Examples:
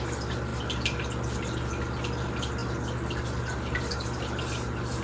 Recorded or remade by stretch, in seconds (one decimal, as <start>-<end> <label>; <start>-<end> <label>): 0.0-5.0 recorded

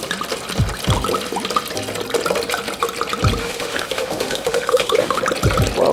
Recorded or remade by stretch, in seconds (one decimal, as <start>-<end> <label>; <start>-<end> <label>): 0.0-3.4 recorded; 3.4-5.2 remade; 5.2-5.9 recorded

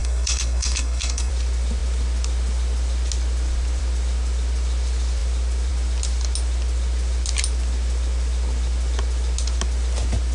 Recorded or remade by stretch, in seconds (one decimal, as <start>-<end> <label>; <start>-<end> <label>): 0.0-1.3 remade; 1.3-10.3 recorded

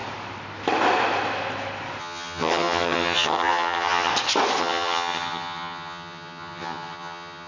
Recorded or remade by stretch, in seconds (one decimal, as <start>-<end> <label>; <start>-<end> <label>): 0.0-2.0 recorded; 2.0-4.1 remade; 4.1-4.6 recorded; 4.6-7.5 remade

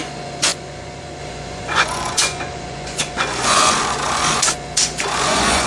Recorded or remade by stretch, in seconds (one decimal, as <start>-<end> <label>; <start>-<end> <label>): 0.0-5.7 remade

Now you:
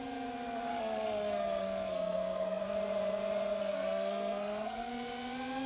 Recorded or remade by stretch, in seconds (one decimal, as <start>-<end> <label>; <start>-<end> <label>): 0.0-0.7 recorded; 0.7-2.6 remade; 2.6-3.6 recorded; 3.6-4.9 remade; 4.9-5.7 recorded

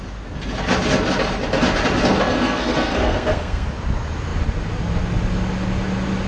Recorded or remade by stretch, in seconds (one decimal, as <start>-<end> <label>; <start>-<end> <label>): 0.0-2.2 recorded; 2.2-3.7 remade; 3.7-6.3 recorded

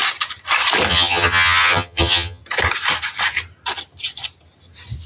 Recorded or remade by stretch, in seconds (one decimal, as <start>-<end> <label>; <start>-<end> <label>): 0.0-0.9 recorded; 0.9-2.4 remade; 2.4-5.1 recorded